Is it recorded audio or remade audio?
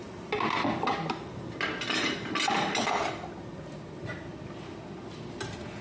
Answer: recorded